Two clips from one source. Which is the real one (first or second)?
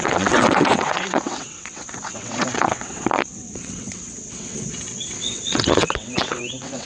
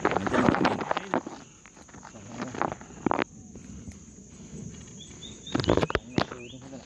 second